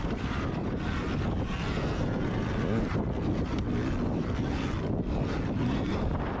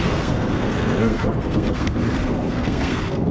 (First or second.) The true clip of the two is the first